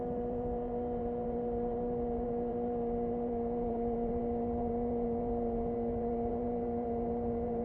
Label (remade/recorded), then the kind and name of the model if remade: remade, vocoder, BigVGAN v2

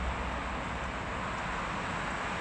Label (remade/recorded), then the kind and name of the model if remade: recorded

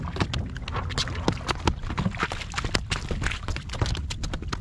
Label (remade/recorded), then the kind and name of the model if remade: recorded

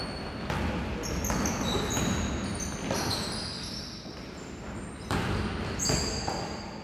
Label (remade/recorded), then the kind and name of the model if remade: recorded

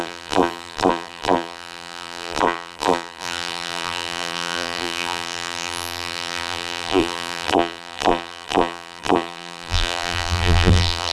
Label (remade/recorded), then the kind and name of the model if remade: remade, vocoder, BigVGAN v2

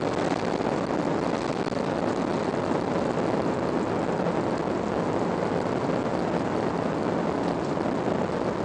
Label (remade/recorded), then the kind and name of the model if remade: recorded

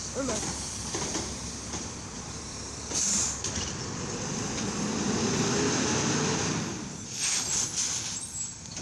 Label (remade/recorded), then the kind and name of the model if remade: remade, vocoder, BigVGAN v2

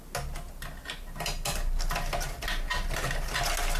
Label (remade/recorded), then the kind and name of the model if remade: recorded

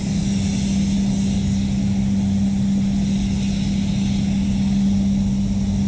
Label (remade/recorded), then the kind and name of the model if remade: recorded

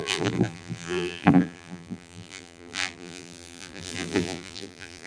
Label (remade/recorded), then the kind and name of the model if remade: remade, vocoder, BigVGAN v2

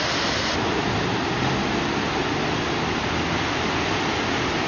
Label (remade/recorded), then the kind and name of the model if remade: recorded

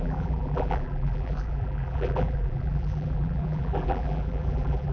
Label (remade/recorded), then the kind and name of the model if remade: remade, vocoder, BigVGAN v2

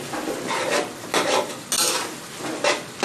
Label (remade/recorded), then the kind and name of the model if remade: recorded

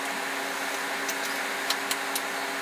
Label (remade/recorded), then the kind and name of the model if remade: recorded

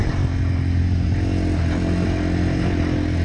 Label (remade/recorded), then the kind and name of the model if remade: recorded